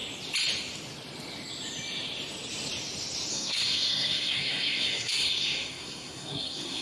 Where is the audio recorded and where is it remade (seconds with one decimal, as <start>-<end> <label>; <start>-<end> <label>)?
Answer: 0.0-3.3 recorded; 3.3-6.8 remade